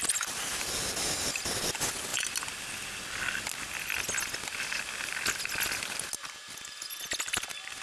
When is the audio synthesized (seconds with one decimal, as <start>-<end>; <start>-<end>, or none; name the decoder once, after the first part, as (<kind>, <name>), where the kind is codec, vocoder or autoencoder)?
none